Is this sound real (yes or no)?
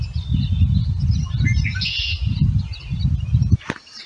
yes